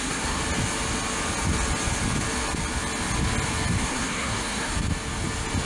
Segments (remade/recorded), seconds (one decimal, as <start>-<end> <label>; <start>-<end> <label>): 0.0-0.4 remade; 0.4-3.8 recorded; 3.8-4.7 remade; 4.7-5.7 recorded